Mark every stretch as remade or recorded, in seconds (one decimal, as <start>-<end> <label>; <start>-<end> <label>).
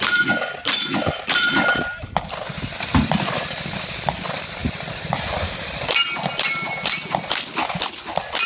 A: 0.0-8.5 recorded